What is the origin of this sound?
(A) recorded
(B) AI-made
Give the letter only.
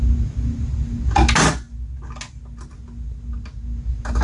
A